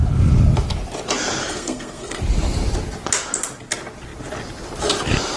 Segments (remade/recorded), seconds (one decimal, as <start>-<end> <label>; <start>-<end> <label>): 0.0-1.4 recorded; 1.4-2.2 remade; 2.2-5.4 recorded